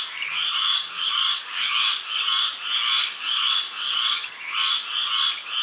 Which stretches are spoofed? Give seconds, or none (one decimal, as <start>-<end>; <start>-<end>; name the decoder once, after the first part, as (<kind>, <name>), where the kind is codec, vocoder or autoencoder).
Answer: 0.6-2.2 (codec, DAC); 3.0-4.3